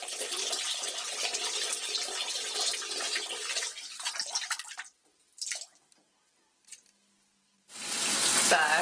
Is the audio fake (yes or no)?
no